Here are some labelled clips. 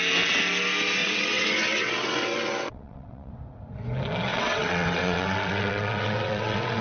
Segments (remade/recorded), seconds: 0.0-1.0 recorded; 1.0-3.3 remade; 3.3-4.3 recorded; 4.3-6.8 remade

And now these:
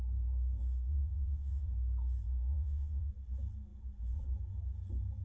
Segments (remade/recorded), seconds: 0.0-0.9 recorded; 0.9-1.7 remade; 1.7-2.5 recorded; 2.5-3.1 remade; 3.1-5.2 recorded

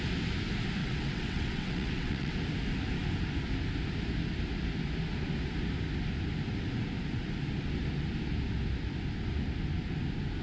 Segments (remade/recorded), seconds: 0.0-0.8 recorded; 0.8-2.3 remade; 2.3-10.4 recorded

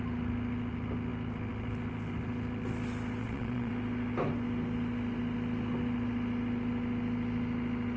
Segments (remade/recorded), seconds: 0.0-3.2 recorded; 3.2-3.7 remade; 3.7-8.0 recorded

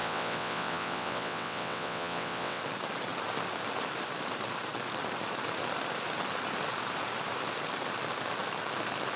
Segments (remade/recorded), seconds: 0.0-2.6 remade; 2.6-9.2 recorded

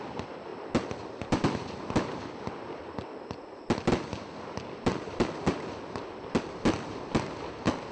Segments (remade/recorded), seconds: 0.0-7.9 recorded